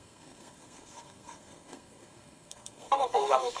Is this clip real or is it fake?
fake